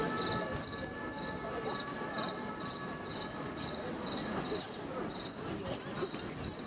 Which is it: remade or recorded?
recorded